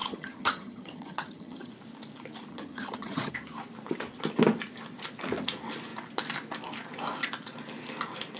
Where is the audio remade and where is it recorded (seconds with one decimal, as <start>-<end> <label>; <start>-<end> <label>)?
0.0-1.7 remade; 1.7-2.5 recorded; 2.5-3.3 remade; 3.3-8.4 recorded